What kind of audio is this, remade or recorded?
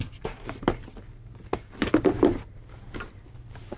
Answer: recorded